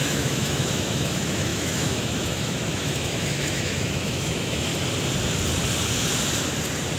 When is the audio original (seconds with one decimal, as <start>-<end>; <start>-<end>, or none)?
4.7-7.0